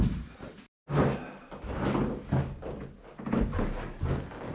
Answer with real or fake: real